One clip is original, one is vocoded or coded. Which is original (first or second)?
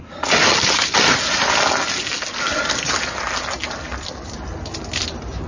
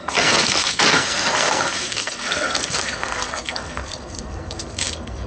first